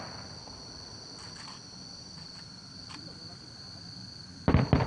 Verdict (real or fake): real